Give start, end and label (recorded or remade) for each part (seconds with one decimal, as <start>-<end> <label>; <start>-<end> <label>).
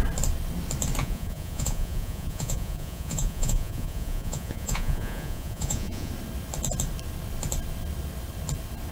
0.0-1.0 recorded; 1.0-6.1 remade; 6.1-8.9 recorded